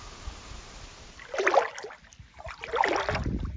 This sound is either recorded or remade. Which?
recorded